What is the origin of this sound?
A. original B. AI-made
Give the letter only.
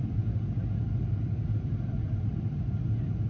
A